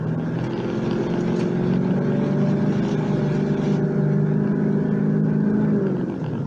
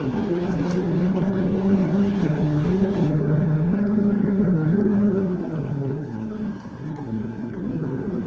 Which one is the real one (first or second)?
first